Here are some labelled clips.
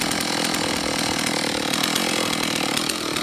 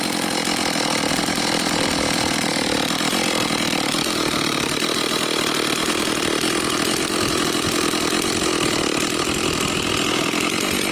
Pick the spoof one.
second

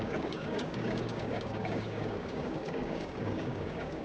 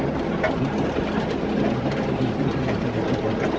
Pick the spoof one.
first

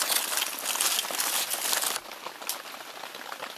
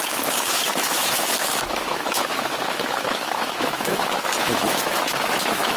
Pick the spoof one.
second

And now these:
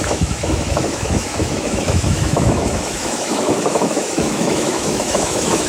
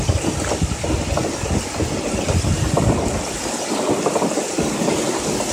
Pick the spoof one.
first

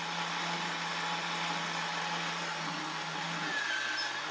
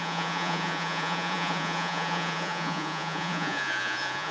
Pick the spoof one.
second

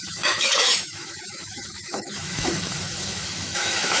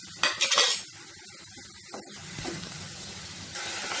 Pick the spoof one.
first